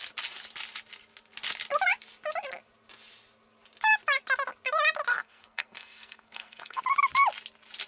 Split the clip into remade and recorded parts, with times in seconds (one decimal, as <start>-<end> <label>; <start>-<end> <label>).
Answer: 0.0-5.1 recorded; 5.1-6.8 remade; 6.8-7.9 recorded